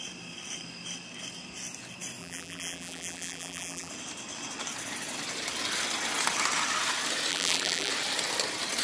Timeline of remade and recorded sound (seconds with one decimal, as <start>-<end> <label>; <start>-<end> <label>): 0.0-2.2 recorded; 2.2-3.9 remade; 3.9-7.3 recorded; 7.3-7.9 remade; 7.9-8.8 recorded